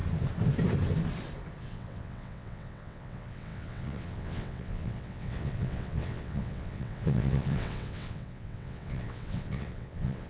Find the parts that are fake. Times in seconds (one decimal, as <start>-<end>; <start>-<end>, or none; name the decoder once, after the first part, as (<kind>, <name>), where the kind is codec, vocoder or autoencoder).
1.6-10.3 (vocoder, WaveNeXt)